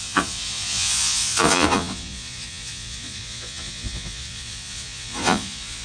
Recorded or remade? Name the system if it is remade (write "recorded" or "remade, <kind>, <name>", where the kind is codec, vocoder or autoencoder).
remade, vocoder, Vocos